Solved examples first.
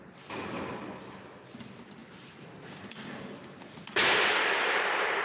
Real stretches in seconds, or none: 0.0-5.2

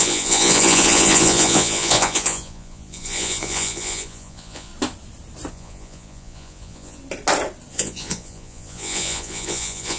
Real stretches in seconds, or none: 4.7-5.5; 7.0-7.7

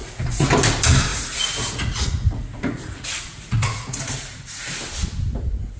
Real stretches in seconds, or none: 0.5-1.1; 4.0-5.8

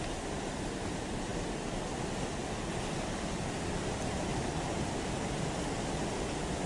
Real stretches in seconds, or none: 0.0-4.3; 5.4-6.7

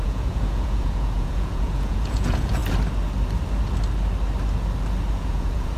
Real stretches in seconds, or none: 2.6-5.1

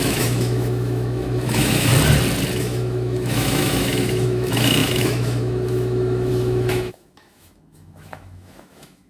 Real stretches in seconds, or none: 1.9-2.5